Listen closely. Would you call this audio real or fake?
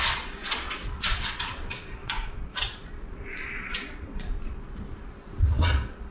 fake